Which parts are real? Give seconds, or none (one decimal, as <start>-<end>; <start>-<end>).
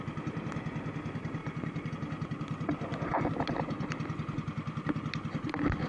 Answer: 0.0-1.4; 1.9-5.9